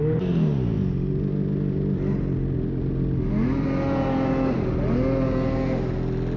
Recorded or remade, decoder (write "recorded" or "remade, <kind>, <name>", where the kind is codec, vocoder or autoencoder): recorded